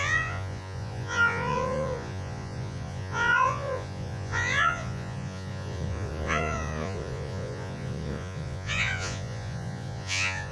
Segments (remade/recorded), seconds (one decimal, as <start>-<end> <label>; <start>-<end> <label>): 0.0-10.5 remade